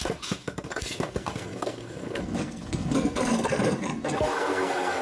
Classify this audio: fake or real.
fake